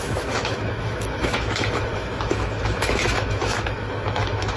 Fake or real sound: fake